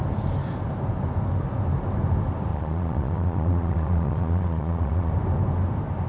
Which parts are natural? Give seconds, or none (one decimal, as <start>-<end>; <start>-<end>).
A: 0.0-2.5; 5.1-6.1